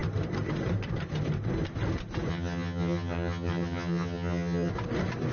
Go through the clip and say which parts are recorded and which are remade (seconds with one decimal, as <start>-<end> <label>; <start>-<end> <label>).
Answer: 0.0-2.3 recorded; 2.3-4.7 remade; 4.7-5.3 recorded

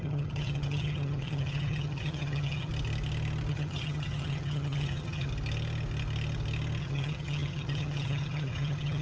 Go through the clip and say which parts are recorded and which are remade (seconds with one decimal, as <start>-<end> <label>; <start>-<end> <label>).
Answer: 0.0-2.7 remade; 2.7-3.5 recorded; 3.5-5.3 remade; 5.3-6.8 recorded; 6.8-9.0 remade